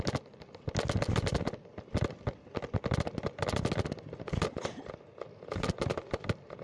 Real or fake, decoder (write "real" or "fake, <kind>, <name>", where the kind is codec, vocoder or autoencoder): real